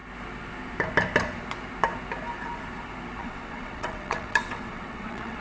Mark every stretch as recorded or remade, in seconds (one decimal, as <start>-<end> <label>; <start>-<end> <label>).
0.0-3.2 recorded; 3.2-5.4 remade